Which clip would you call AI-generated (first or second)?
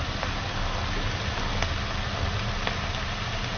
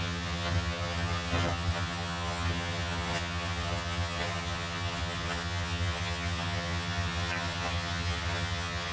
second